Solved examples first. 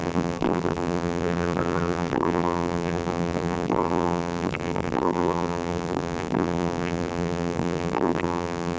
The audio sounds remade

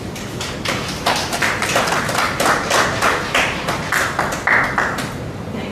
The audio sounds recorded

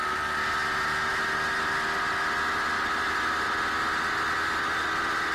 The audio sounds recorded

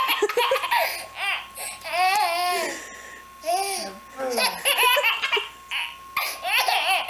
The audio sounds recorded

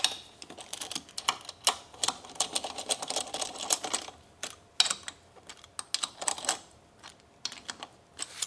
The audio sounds recorded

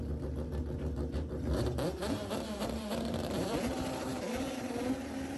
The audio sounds remade